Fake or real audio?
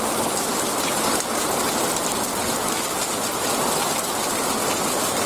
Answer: real